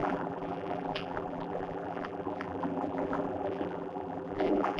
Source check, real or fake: fake